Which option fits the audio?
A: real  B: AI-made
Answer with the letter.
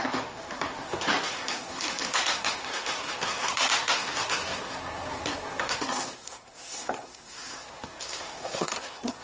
B